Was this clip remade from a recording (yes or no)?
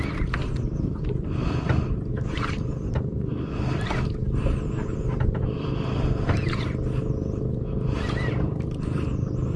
no